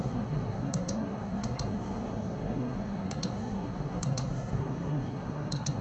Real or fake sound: fake